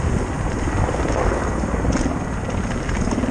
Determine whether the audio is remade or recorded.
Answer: recorded